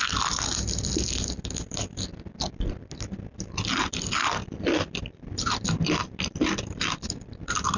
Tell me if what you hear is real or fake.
real